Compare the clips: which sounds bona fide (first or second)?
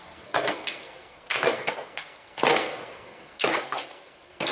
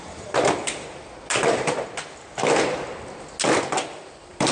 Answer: second